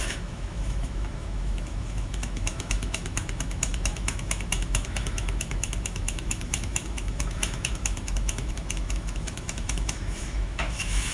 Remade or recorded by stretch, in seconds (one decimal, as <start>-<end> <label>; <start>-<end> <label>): 0.0-11.1 remade